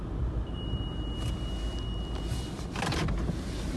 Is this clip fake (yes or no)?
no